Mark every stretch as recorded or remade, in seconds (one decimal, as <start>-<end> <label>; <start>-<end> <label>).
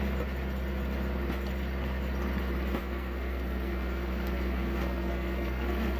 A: 0.0-2.8 recorded; 2.8-6.0 remade